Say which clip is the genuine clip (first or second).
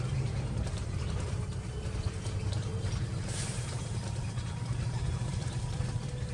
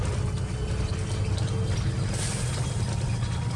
second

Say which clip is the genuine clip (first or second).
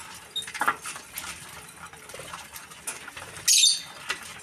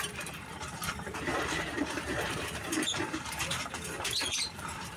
first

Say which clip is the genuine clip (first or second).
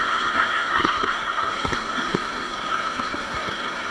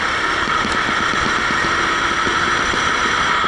second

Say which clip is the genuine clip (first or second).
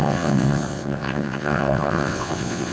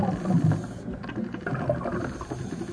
second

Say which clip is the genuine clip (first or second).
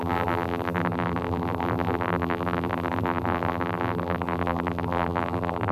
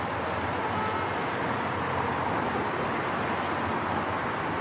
second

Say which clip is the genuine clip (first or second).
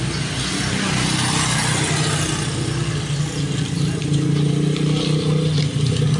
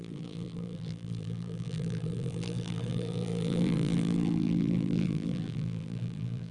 first